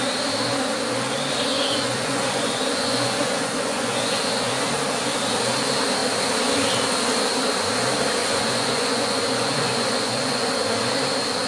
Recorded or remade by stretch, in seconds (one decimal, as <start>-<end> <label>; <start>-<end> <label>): 0.0-1.5 recorded; 1.5-4.7 remade; 4.7-8.2 recorded; 8.2-10.5 remade; 10.5-11.5 recorded